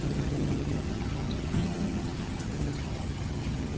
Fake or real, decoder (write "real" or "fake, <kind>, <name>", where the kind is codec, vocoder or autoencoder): fake, vocoder, HiFi-GAN